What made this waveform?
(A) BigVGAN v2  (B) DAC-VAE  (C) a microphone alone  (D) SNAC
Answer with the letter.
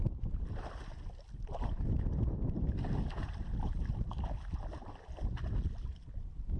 C